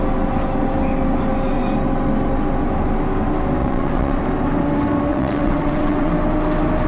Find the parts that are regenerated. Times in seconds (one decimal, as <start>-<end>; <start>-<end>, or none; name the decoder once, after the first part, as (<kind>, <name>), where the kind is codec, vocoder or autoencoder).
3.6-4.2 (vocoder, WaveNeXt); 5.1-6.1